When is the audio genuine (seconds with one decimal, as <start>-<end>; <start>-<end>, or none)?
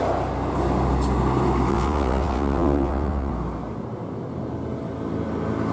0.0-1.7; 3.3-5.7